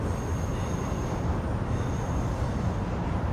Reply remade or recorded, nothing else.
recorded